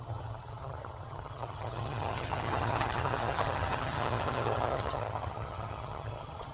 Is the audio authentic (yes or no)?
no